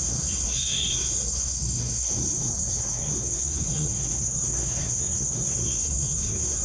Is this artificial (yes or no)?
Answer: yes